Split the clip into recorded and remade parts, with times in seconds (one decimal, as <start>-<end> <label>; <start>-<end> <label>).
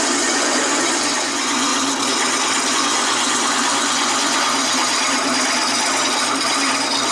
0.0-1.7 remade; 1.7-2.7 recorded; 2.7-4.6 remade; 4.6-7.1 recorded